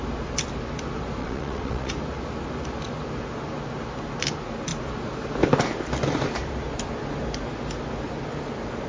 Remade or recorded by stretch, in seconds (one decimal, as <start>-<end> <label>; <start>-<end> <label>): 0.0-1.2 recorded; 1.2-1.9 remade; 1.9-8.9 recorded